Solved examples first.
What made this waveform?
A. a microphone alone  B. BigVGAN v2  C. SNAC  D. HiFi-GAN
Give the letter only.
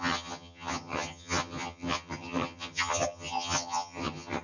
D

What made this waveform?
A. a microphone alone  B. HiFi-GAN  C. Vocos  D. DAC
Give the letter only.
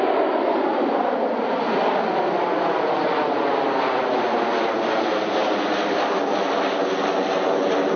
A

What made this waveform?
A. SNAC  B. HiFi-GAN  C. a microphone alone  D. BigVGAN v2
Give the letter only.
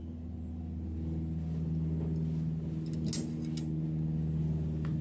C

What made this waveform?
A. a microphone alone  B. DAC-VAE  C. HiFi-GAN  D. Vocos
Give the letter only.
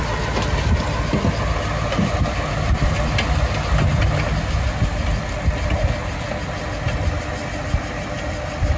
A